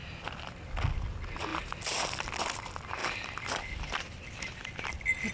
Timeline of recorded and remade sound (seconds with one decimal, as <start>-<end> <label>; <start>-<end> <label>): 0.0-3.0 recorded; 3.0-5.3 remade